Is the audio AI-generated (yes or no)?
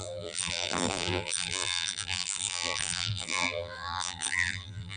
yes